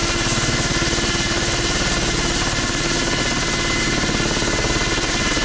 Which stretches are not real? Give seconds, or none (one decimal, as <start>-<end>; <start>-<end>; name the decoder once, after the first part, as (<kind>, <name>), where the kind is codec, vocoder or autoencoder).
none